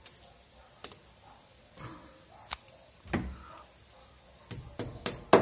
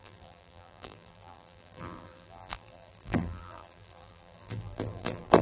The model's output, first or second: second